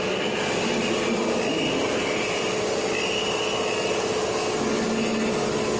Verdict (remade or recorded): recorded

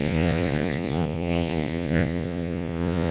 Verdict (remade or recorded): remade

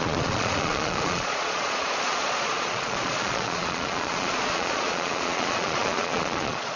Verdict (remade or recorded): remade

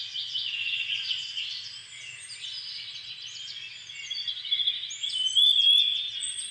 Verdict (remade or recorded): recorded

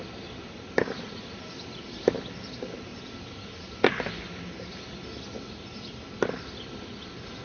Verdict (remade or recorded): recorded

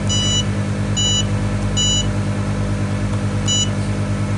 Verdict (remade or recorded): recorded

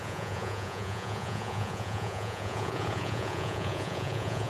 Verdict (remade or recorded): remade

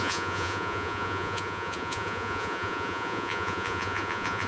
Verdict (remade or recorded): remade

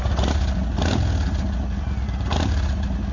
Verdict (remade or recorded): recorded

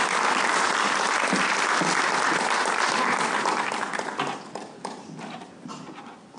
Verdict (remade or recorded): recorded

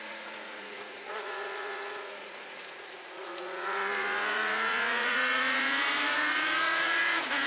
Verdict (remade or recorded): remade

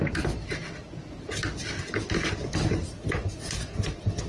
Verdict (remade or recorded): recorded